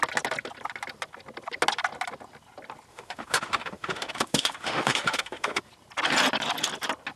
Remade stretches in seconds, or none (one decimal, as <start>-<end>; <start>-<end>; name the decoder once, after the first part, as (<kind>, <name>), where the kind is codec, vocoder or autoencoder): 2.9-5.6 (autoencoder, DAC-VAE)